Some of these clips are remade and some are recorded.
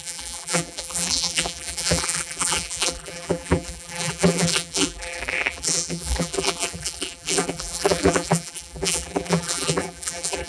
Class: remade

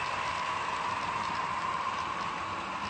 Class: recorded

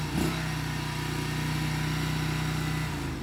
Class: recorded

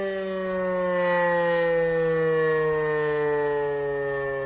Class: recorded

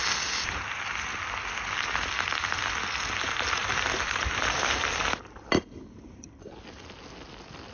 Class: recorded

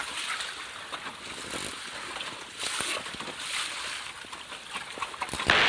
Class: recorded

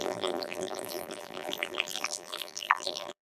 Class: remade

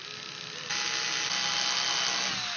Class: recorded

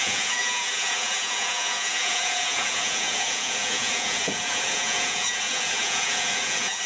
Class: remade